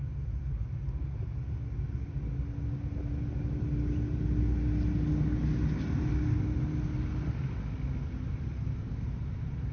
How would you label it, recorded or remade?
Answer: recorded